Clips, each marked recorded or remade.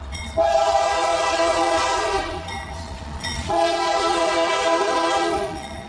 remade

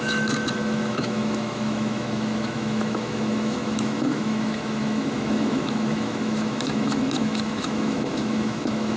remade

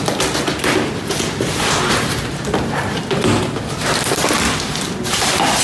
recorded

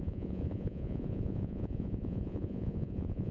remade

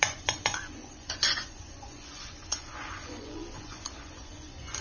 remade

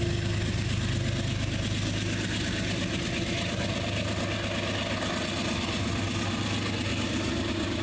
recorded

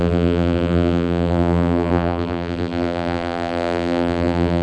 remade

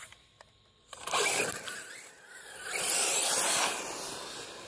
recorded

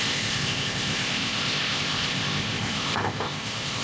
remade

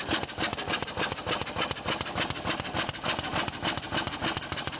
recorded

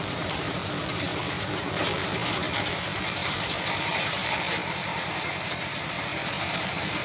remade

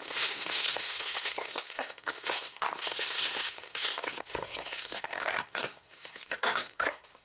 remade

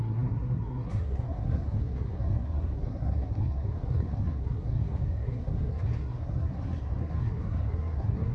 remade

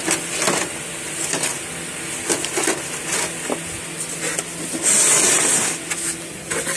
recorded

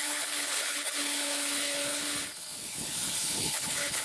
remade